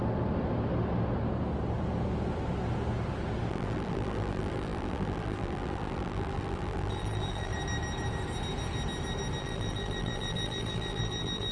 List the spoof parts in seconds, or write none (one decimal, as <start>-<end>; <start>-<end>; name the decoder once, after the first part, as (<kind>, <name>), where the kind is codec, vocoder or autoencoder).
3.5-7.5 (vocoder, BigVGAN v2); 9.4-11.5